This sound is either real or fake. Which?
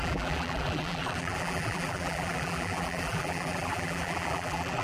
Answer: fake